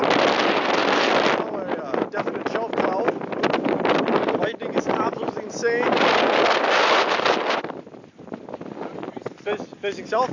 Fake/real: real